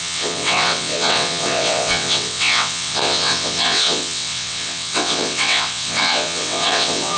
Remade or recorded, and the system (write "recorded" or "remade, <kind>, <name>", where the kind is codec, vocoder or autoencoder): remade, vocoder, WaveNeXt